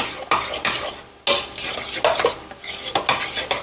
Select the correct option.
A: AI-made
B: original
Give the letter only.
B